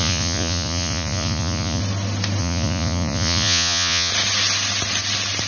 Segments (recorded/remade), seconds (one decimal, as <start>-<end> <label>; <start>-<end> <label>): 0.0-1.8 remade; 1.8-2.4 recorded; 2.4-4.1 remade; 4.1-5.5 recorded